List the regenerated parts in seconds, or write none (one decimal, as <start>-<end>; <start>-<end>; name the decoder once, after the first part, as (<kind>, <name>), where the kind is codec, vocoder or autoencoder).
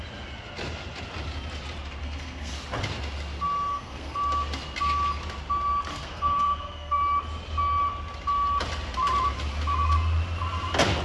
2.0-2.5 (codec, SNAC); 3.7-4.2; 5.9-7.0